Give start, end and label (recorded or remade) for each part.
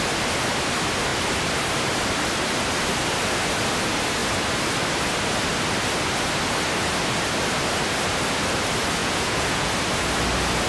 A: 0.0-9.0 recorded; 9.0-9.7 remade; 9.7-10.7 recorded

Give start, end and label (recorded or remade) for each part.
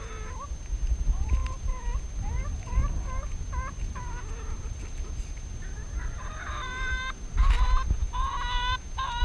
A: 0.0-6.0 recorded; 6.0-7.6 remade; 7.6-9.2 recorded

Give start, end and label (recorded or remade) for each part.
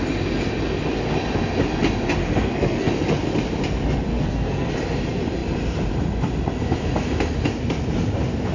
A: 0.0-2.2 recorded; 2.2-2.9 remade; 2.9-4.1 recorded; 4.1-4.7 remade; 4.7-8.5 recorded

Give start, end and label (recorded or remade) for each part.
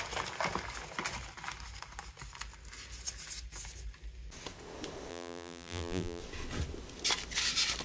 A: 0.0-5.1 recorded; 5.1-6.2 remade; 6.2-7.8 recorded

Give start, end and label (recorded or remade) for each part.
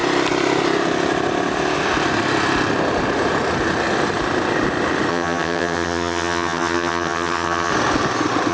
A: 0.0-5.1 recorded; 5.1-7.7 remade; 7.7-8.5 recorded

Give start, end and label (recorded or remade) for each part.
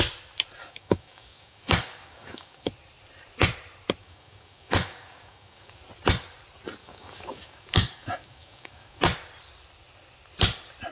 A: 0.0-0.6 recorded; 0.6-2.7 remade; 2.7-4.0 recorded; 4.0-5.8 remade; 5.8-6.8 recorded; 6.8-9.0 remade; 9.0-10.9 recorded